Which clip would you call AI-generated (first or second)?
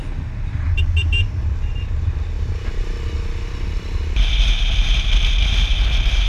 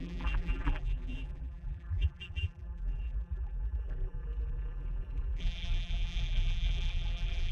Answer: second